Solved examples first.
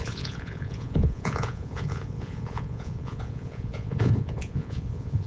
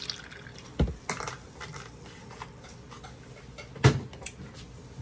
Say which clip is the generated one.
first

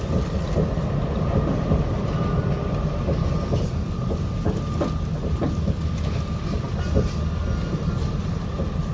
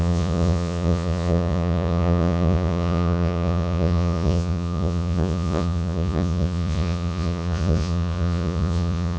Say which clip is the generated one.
second